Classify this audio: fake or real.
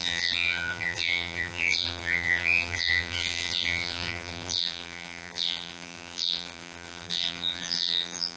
fake